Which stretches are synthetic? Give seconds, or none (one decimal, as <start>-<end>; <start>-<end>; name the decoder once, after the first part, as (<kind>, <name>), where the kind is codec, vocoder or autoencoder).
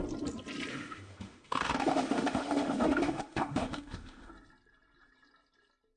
0.7-4.3 (autoencoder, DAC-VAE)